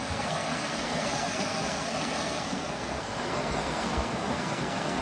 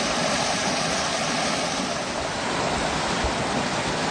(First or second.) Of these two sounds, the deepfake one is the first